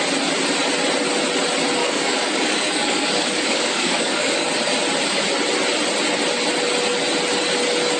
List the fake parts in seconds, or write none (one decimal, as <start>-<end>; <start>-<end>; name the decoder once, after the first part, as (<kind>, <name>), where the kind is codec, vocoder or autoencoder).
1.8-4.5 (codec, DAC)